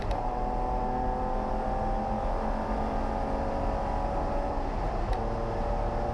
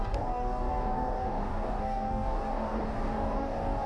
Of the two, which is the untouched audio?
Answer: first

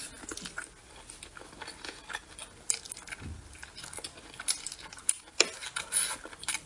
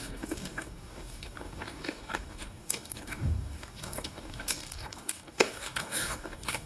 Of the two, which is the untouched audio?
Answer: first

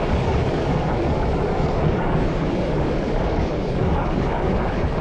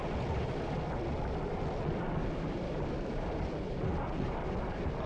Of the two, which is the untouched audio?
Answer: second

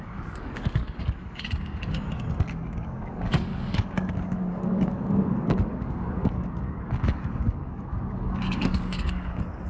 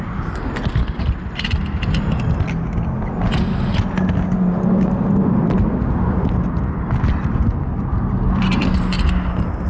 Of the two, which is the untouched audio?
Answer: second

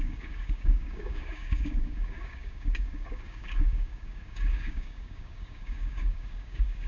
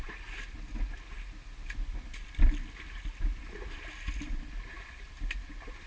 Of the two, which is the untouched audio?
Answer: second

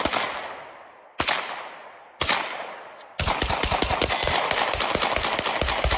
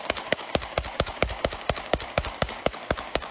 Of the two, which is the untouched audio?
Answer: first